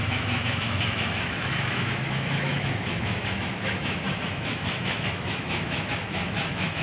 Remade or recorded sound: remade